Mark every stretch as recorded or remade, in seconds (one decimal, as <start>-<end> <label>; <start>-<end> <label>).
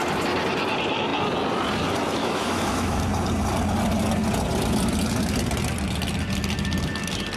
0.0-2.2 recorded; 2.2-3.0 remade; 3.0-7.4 recorded